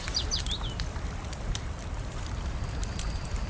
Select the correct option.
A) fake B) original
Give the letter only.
A